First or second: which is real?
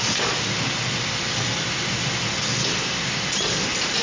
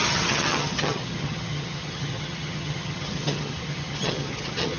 first